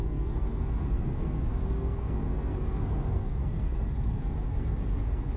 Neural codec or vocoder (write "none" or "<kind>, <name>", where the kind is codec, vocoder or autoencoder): codec, SNAC